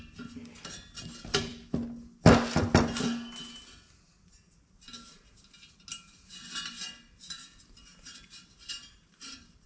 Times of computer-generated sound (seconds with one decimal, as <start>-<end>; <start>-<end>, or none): none